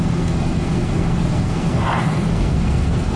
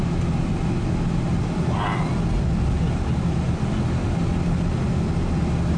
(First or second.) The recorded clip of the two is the second